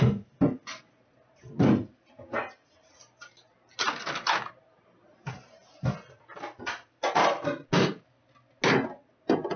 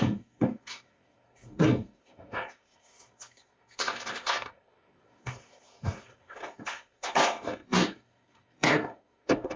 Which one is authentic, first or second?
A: first